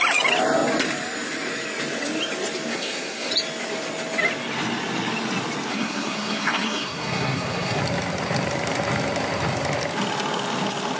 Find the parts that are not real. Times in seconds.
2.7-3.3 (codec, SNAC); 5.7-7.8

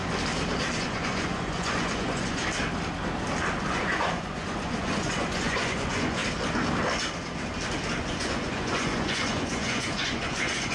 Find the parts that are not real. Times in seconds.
0.8-2.4 (vocoder, Vocos); 3.6-6.2; 8.0-10.7

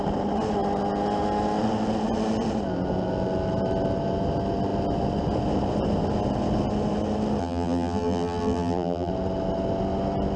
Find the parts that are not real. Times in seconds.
7.4-9.1 (vocoder, BigVGAN v2)

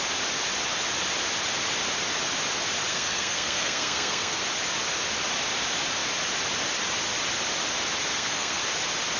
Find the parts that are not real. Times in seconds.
2.9-4.4 (codec, SNAC); 8.1-8.6

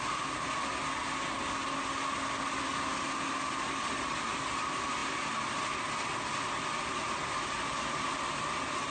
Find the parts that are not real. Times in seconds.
none

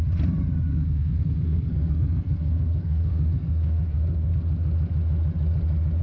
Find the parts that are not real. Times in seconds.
0.7-4.3 (codec, SNAC)

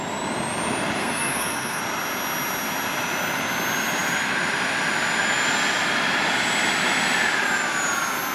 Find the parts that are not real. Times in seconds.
1.0-1.8 (codec, SNAC)